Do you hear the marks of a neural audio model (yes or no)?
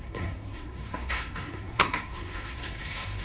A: yes